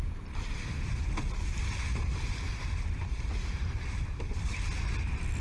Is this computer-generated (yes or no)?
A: no